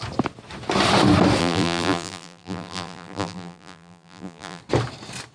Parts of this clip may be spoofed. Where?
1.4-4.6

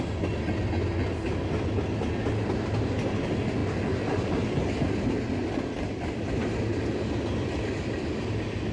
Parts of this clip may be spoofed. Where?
none

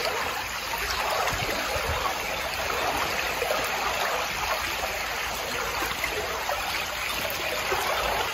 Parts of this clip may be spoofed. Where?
5.3-6.1

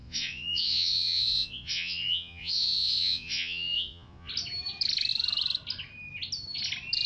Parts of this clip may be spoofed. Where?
0.0-4.3

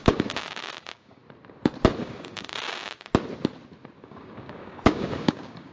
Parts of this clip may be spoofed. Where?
0.0-1.2; 2.0-3.1; 4.0-5.7

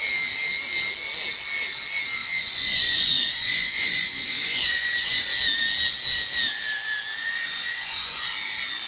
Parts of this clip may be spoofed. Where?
2.2-5.2; 7.2-8.2

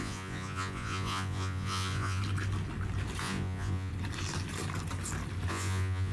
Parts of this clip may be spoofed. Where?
0.0-2.2; 3.2-3.9; 5.5-6.1